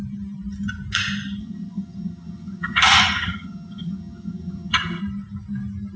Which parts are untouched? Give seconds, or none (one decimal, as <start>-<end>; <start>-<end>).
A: 0.0-1.4; 5.0-6.0